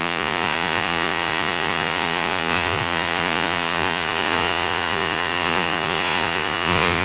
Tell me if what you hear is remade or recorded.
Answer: remade